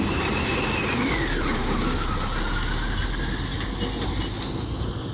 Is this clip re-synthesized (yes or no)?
no